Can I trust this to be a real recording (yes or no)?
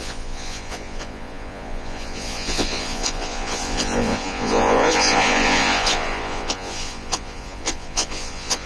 no